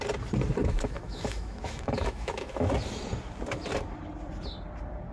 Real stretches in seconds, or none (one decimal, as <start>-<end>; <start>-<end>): 0.0-0.6; 2.7-5.1